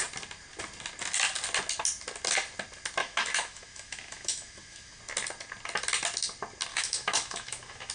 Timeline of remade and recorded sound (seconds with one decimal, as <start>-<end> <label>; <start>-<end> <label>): 0.0-3.0 recorded; 3.0-5.0 remade; 5.0-6.7 recorded; 6.7-7.9 remade